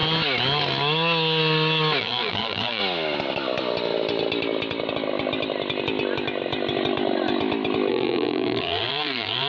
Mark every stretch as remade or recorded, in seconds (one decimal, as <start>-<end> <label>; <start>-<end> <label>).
0.0-2.0 recorded; 2.0-2.8 remade; 2.8-7.9 recorded; 7.9-9.5 remade